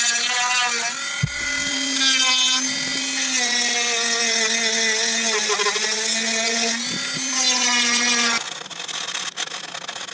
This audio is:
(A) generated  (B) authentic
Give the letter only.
B